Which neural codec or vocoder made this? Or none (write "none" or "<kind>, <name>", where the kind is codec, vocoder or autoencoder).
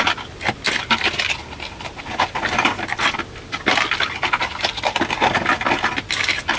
none